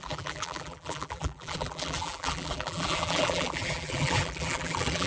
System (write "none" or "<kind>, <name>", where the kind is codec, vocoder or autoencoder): vocoder, BigVGAN v2